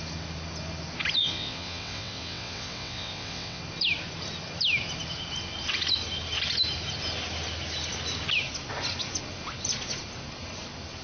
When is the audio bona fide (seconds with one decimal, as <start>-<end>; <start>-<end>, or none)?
0.0-1.2; 3.6-11.0